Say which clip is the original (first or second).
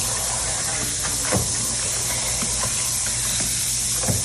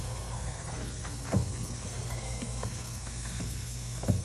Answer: first